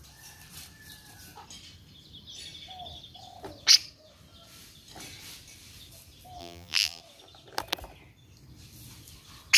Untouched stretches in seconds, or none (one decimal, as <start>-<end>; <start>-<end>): 0.0-6.4; 7.0-9.6